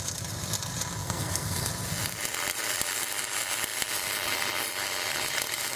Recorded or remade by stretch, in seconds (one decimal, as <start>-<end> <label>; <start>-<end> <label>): 0.0-1.0 recorded; 1.0-1.7 remade; 1.7-5.8 recorded